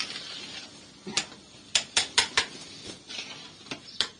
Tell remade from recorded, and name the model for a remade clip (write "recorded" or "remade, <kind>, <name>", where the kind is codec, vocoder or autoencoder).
recorded